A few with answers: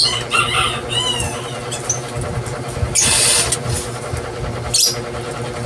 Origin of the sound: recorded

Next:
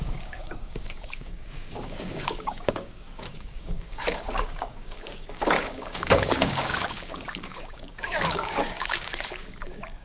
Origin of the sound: remade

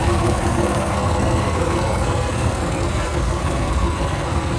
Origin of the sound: remade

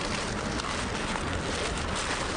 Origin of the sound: recorded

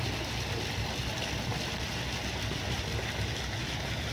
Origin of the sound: recorded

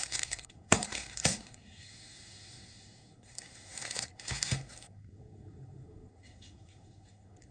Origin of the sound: remade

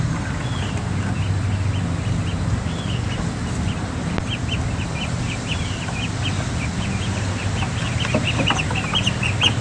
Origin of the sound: recorded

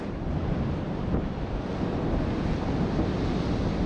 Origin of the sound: remade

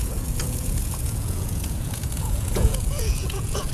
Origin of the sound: remade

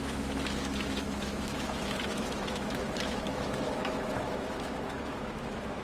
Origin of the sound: remade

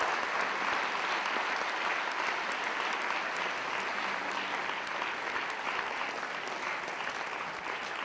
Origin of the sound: recorded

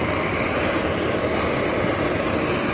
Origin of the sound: recorded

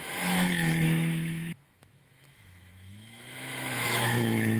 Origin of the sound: remade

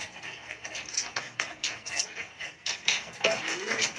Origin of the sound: remade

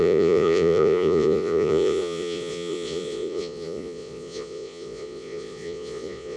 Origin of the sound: remade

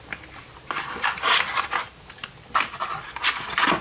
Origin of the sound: recorded